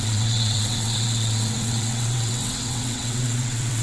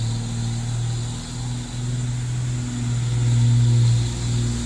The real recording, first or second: second